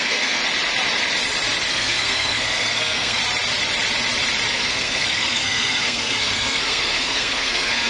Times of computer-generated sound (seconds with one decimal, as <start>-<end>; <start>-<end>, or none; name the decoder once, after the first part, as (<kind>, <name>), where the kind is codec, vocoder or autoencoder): 0.0-0.4 (codec, SNAC); 1.7-3.2; 4.5-7.9